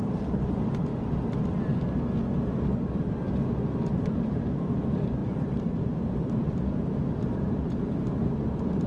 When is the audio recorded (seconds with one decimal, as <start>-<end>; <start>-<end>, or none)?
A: 0.9-4.0